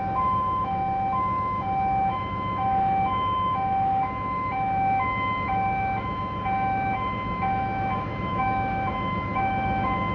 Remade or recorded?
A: remade